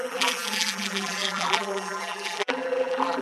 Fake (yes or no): yes